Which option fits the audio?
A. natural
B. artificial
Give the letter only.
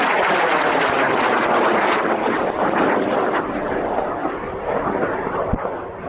A